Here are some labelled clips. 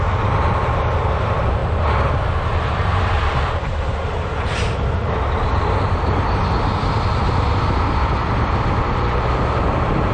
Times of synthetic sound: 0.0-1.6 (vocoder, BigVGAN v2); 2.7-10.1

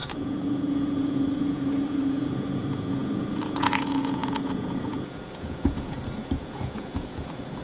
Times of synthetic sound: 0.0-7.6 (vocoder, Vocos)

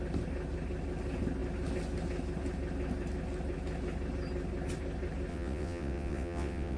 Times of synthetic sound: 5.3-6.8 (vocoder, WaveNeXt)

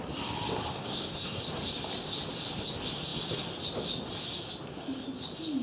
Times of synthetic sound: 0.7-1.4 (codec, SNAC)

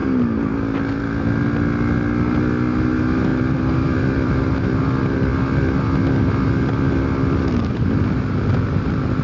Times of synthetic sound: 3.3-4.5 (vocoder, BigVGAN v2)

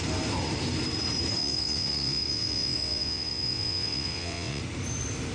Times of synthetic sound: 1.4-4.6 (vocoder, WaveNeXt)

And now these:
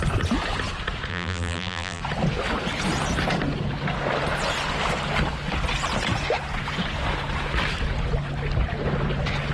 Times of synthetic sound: 1.1-2.0 (vocoder, BigVGAN v2)

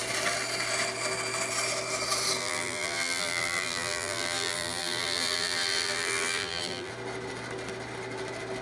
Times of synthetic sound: 2.4-6.9 (vocoder, BigVGAN v2)